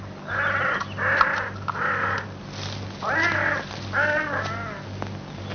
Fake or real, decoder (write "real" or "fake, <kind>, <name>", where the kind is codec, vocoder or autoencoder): real